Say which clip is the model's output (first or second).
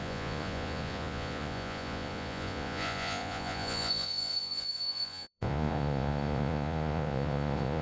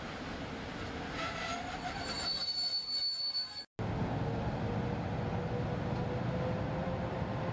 first